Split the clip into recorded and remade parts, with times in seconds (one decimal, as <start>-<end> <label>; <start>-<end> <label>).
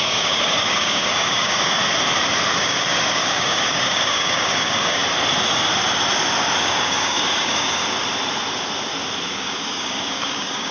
0.0-1.8 remade; 1.8-2.6 recorded; 2.6-5.0 remade; 5.0-6.6 recorded; 6.6-7.8 remade; 7.8-9.3 recorded; 9.3-10.7 remade